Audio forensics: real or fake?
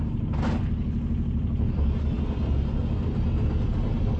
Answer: real